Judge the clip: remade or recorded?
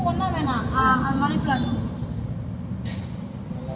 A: recorded